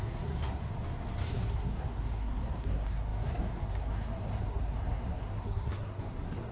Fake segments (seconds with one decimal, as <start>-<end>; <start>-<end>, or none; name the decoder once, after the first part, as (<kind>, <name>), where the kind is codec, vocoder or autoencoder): 0.0-0.6 (codec, SNAC); 1.3-6.5